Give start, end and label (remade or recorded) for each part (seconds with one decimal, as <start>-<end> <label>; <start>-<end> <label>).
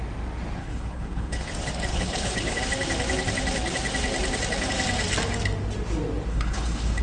0.0-0.6 recorded; 0.6-1.5 remade; 1.5-1.9 recorded; 1.9-2.6 remade; 2.6-6.3 recorded; 6.3-7.0 remade